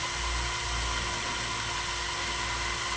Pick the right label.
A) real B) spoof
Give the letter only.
A